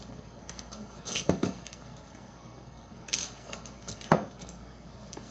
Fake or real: fake